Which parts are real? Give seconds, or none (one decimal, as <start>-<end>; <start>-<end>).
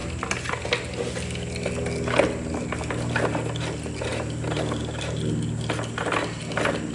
0.0-4.1; 5.3-6.9